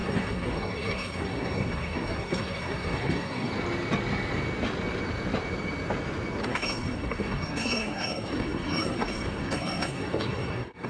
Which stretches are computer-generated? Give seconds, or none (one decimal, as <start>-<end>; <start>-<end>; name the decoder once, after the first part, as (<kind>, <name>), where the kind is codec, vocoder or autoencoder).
0.0-3.5 (codec, SNAC); 6.4-10.9